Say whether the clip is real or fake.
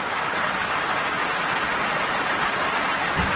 real